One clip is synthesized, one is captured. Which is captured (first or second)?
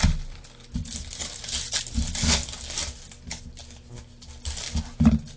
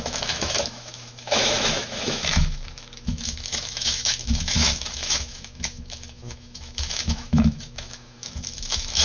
first